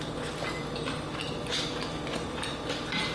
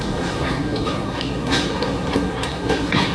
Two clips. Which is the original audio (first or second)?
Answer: first